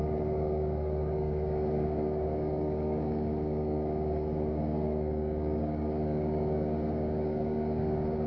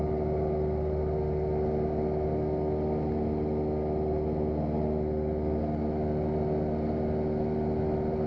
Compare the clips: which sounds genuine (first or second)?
second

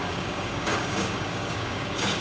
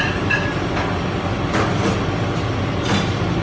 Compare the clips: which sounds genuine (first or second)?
second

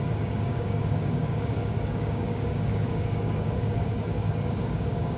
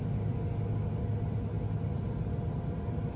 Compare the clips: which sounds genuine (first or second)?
second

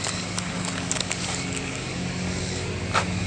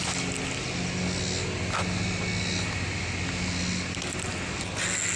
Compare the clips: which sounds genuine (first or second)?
second